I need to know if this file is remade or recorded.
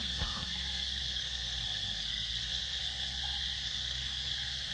remade